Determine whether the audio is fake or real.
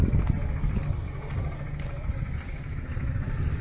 real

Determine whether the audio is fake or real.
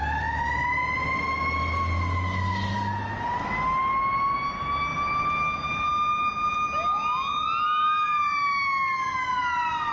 real